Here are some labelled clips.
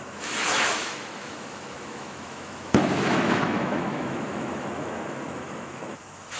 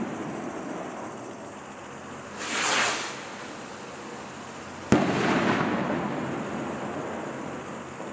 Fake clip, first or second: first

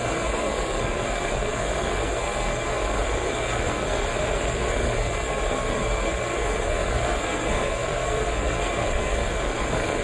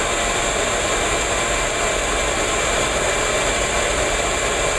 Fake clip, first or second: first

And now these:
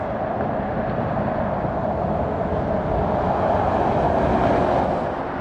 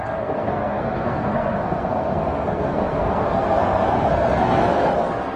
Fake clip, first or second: second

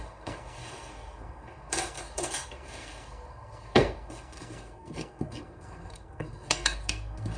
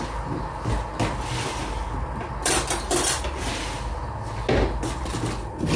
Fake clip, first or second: first